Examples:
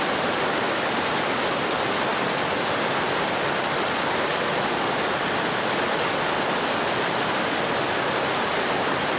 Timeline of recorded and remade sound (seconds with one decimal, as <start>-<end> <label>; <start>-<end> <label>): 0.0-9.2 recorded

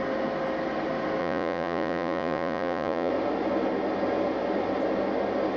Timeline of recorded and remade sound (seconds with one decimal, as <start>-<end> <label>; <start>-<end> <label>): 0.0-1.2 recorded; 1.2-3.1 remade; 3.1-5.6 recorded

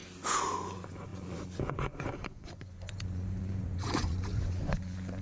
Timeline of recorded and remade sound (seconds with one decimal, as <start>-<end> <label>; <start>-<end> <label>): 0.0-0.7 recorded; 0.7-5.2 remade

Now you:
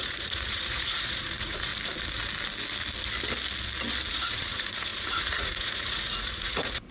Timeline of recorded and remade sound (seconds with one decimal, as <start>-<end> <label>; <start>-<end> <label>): 0.0-1.7 remade; 1.7-4.1 recorded; 4.1-6.9 remade

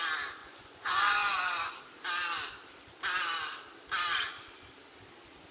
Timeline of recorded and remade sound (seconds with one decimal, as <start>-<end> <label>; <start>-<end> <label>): 0.0-0.4 recorded; 0.4-1.8 remade; 1.8-5.5 recorded

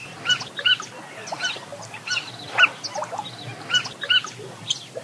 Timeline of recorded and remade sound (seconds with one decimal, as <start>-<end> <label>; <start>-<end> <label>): 0.0-5.0 recorded

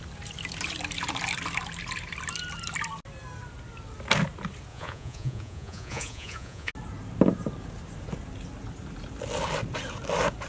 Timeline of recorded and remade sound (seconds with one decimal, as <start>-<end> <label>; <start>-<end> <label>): 0.0-4.7 recorded; 4.7-6.7 remade; 6.7-10.5 recorded